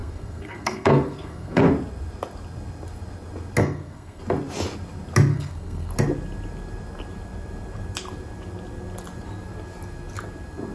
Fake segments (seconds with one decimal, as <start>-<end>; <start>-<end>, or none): 0.0-1.6; 3.6-4.2; 5.3-5.9